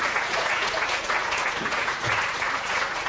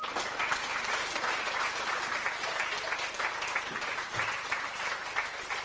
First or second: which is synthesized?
first